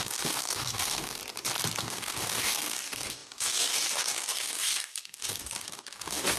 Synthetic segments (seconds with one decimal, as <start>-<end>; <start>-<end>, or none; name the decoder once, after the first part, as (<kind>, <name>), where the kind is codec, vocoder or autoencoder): 0.0-1.2 (codec, DAC); 1.8-6.4